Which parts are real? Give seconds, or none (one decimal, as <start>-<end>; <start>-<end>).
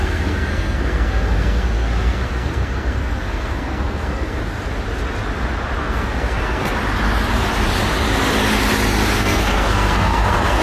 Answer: 4.4-5.8; 6.8-9.2